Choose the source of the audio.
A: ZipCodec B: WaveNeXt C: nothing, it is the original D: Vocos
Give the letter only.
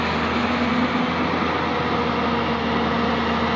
C